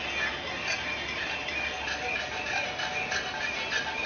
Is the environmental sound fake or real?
real